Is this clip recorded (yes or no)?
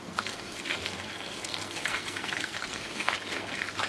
no